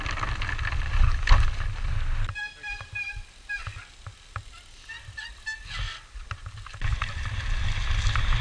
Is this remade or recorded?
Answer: recorded